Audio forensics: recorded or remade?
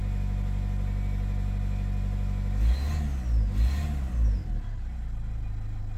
recorded